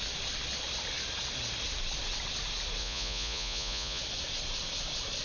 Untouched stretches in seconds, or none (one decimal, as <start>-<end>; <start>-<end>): 0.0-2.8; 4.0-5.2